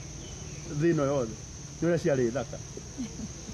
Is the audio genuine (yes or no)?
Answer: yes